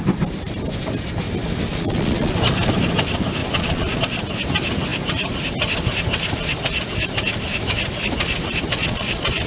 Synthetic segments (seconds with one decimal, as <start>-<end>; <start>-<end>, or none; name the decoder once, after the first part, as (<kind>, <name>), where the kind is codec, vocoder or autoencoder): 1.7-2.3 (vocoder, Vocos); 3.4-4.0; 8.8-9.5